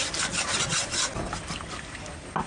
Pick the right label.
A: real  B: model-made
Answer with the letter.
A